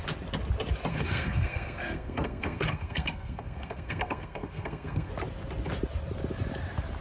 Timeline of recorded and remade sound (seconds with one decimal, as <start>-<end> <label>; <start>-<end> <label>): 0.0-0.9 recorded; 0.9-5.1 remade; 5.1-7.0 recorded